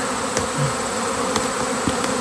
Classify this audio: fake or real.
real